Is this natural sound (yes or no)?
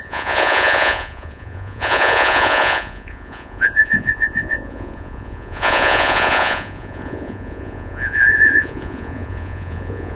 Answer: no